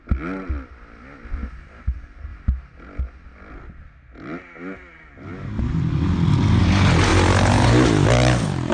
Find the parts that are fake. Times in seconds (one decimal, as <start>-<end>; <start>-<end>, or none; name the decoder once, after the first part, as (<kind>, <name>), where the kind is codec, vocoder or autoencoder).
none